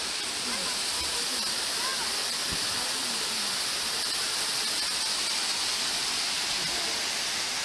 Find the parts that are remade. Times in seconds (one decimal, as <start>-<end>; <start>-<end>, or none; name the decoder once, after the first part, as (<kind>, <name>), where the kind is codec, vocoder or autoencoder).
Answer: none